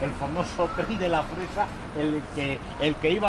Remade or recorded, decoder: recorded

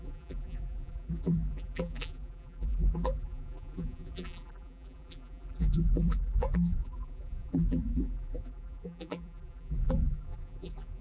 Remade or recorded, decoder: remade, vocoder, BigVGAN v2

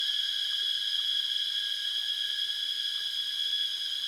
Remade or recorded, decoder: recorded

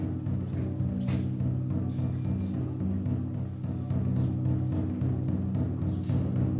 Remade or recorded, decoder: recorded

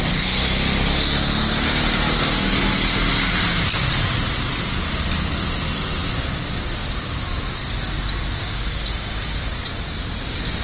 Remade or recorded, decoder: recorded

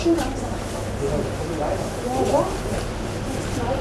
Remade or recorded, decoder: recorded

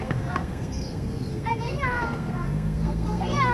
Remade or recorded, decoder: remade, codec, SNAC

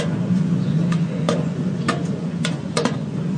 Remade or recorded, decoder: remade, vocoder, Vocos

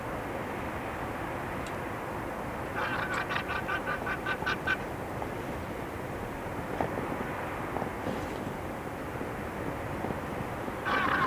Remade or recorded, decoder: recorded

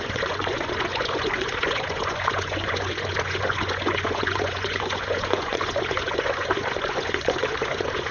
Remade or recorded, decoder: remade, vocoder, Vocos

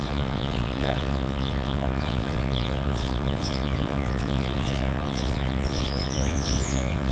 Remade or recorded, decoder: remade, vocoder, WaveNeXt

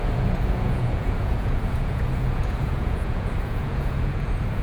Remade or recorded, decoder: remade, vocoder, Vocos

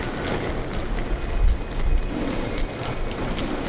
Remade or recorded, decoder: recorded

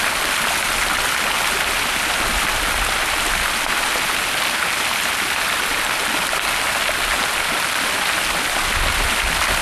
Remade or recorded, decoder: recorded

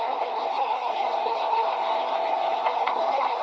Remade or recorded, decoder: remade, codec, SNAC